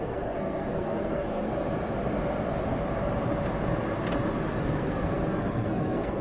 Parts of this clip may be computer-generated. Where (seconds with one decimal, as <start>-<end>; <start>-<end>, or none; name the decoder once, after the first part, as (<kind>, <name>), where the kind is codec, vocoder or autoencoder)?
0.0-1.5 (codec, SNAC); 4.6-6.2